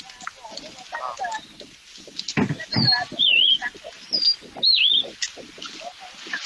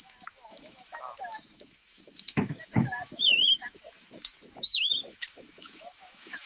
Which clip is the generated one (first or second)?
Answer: second